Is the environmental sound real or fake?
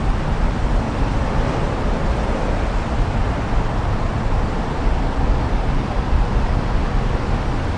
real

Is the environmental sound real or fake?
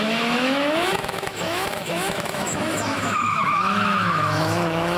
fake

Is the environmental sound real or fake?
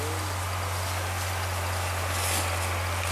real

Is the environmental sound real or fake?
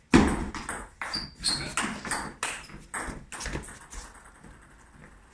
real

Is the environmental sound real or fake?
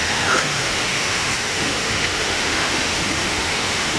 fake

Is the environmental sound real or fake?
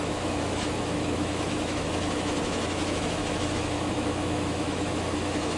fake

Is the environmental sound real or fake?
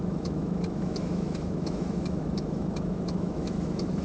fake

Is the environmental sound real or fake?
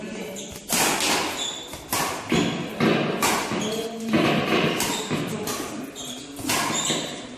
real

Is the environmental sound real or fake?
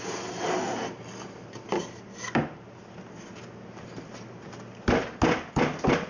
real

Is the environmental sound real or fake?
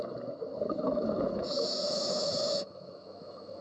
fake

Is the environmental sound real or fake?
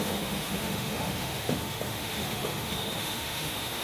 fake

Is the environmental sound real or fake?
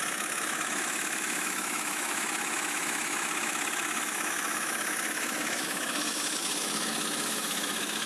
fake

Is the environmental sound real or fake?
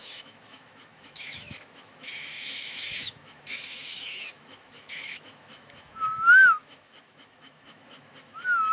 fake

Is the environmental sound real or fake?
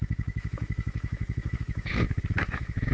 fake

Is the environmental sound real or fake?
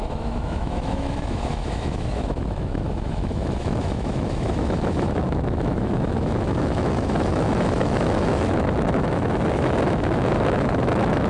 fake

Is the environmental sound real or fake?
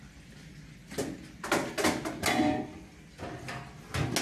real